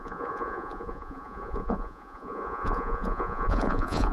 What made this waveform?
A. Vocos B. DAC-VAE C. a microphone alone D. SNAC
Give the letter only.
A